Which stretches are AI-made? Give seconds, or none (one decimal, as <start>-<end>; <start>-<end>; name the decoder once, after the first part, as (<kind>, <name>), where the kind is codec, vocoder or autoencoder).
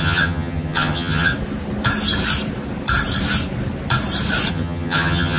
0.0-1.3 (vocoder, HiFi-GAN); 4.5-5.4